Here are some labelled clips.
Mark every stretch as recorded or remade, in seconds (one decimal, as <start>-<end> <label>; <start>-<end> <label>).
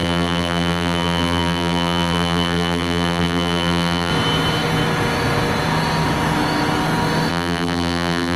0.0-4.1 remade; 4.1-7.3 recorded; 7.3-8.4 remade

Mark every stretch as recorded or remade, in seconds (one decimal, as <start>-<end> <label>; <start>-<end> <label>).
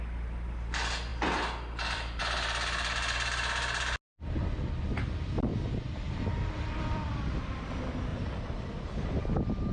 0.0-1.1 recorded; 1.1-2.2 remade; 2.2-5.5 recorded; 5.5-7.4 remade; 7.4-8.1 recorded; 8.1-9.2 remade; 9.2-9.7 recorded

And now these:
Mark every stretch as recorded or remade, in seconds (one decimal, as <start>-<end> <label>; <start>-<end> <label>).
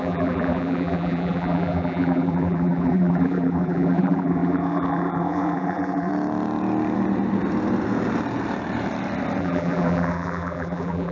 0.0-6.1 remade; 6.1-9.4 recorded; 9.4-11.1 remade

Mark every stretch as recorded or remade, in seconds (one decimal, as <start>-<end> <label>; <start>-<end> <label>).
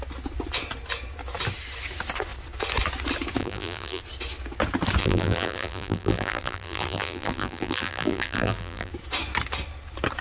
0.0-3.4 recorded; 3.4-4.0 remade; 4.0-5.0 recorded; 5.0-8.9 remade; 8.9-10.2 recorded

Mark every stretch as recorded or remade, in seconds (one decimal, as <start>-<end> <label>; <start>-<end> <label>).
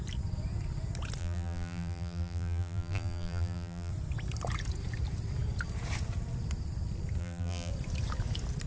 0.0-1.2 recorded; 1.2-3.9 remade; 3.9-7.2 recorded; 7.2-7.7 remade; 7.7-8.7 recorded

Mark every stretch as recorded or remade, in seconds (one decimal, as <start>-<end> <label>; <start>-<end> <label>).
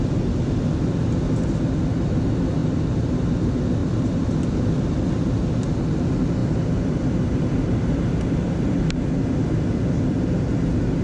0.0-2.6 recorded; 2.6-3.3 remade; 3.3-3.8 recorded; 3.8-4.7 remade; 4.7-6.4 recorded; 6.4-8.7 remade; 8.7-11.0 recorded